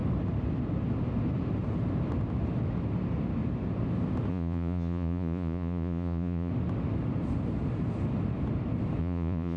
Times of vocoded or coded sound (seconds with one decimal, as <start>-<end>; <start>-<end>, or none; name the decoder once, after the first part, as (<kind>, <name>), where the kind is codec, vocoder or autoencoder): 4.3-6.5 (vocoder, Vocos); 9.0-9.6